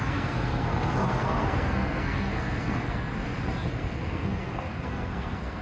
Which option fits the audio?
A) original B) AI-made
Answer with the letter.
B